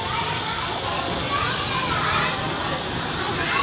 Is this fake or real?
real